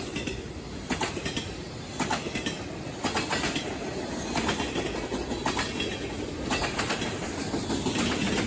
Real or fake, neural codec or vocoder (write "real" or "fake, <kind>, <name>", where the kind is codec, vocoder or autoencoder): real